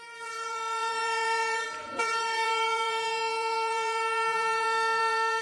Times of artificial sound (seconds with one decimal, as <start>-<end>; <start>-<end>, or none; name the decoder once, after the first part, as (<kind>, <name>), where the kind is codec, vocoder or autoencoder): 0.0-5.4 (vocoder, Vocos)